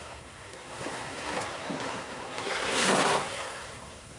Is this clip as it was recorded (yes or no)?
no